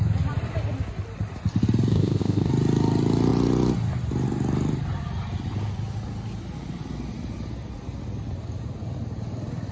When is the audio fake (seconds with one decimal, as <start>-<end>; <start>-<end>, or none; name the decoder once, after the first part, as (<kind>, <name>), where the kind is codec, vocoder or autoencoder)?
1.9-2.5 (codec, ZipCodec)